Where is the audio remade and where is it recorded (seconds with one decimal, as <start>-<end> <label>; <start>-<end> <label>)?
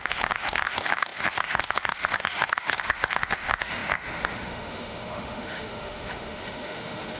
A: 0.0-7.2 remade